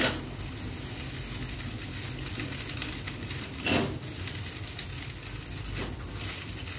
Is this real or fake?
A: real